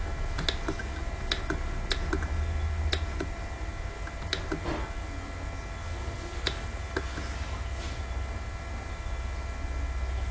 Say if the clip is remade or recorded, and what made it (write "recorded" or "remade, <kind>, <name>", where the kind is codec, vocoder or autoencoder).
recorded